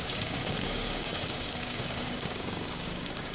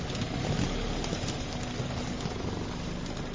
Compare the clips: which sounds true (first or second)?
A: second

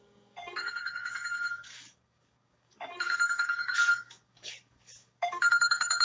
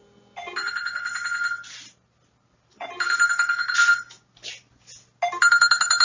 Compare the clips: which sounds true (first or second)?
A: second